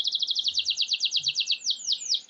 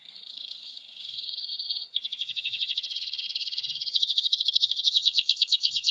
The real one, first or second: first